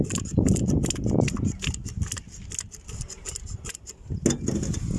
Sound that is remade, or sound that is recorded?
recorded